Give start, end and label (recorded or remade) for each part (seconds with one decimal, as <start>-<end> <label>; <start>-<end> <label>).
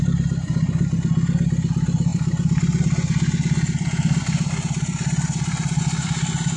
0.0-6.6 recorded